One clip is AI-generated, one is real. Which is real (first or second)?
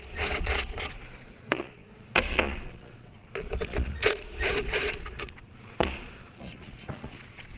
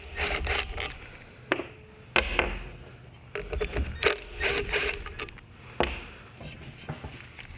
second